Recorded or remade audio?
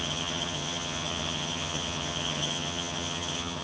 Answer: remade